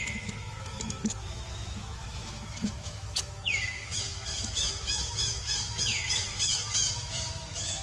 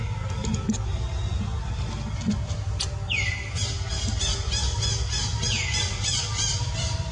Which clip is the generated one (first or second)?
first